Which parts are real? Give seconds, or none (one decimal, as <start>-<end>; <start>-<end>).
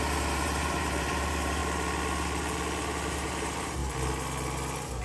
1.6-3.1; 3.8-5.0